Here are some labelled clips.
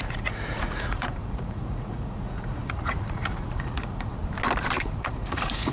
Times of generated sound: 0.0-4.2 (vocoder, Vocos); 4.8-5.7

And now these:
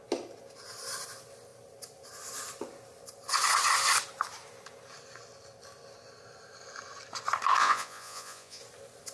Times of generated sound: 7.6-8.6 (vocoder, Vocos)

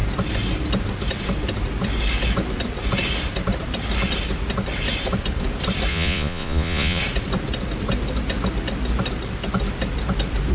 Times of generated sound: 5.9-7.0 (vocoder, Vocos)

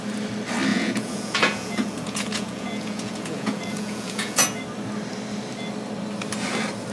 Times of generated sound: 0.7-4.6 (vocoder, Vocos)

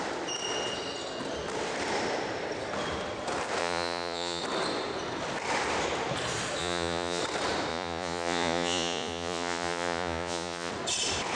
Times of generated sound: 3.6-4.4 (vocoder, Vocos); 6.6-7.2; 7.7-10.7

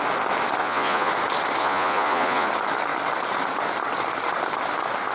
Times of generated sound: 0.6-1.1 (vocoder, Vocos); 1.6-2.5

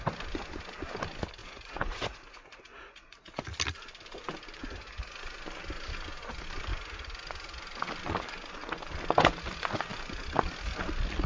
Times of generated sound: 1.4-3.4 (vocoder, Vocos)